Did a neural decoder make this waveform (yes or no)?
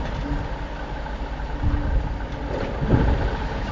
no